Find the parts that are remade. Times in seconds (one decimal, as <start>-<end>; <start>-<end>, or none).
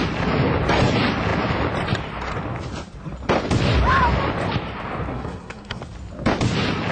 5.1-5.8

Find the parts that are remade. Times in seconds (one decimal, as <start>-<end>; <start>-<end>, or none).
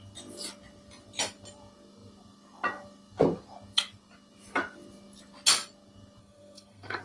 6.2-7.0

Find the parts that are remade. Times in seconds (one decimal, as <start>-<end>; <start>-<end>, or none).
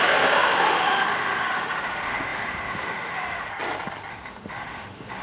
0.0-3.5; 4.1-5.2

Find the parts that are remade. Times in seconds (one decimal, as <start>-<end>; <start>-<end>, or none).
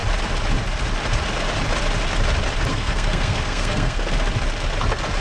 2.7-4.0